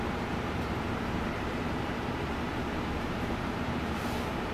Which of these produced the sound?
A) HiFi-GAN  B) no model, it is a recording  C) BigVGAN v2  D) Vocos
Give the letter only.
C